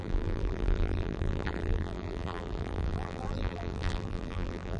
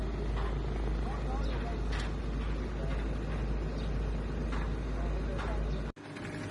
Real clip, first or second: second